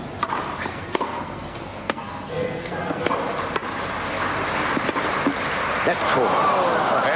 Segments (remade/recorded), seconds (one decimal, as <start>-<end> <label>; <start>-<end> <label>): 0.0-0.7 recorded; 0.7-3.1 remade; 3.1-7.2 recorded

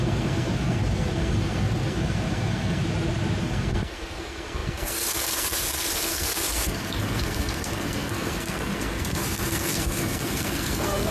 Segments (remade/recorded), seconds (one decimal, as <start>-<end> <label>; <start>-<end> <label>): 0.0-2.8 remade; 2.8-3.4 recorded; 3.4-11.1 remade

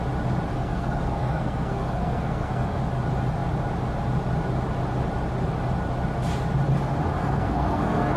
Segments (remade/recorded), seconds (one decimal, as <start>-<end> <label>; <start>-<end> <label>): 0.0-0.5 recorded; 0.5-2.8 remade; 2.8-7.2 recorded; 7.2-8.2 remade

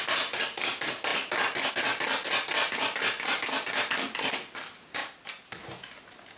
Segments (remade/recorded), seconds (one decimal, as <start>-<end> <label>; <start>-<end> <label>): 0.0-6.4 recorded

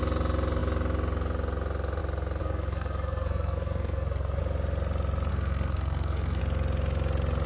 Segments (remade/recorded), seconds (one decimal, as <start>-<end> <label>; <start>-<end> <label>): 0.0-2.4 recorded; 2.4-4.4 remade; 4.4-5.3 recorded; 5.3-6.4 remade; 6.4-7.5 recorded

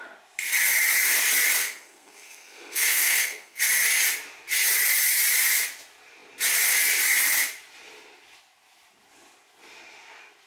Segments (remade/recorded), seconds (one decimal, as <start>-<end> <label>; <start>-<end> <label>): 0.0-1.6 recorded; 1.6-3.6 remade; 3.6-10.5 recorded

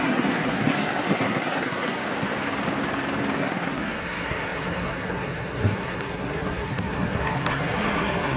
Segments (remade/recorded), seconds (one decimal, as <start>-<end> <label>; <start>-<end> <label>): 0.0-2.0 remade; 2.0-3.4 recorded; 3.4-8.4 remade

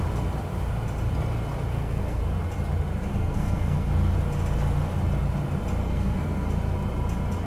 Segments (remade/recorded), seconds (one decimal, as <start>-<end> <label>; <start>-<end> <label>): 0.0-1.7 recorded; 1.7-2.2 remade; 2.2-3.1 recorded; 3.1-3.9 remade; 3.9-5.8 recorded; 5.8-6.5 remade; 6.5-7.5 recorded